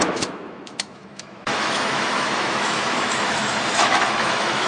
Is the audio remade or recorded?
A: remade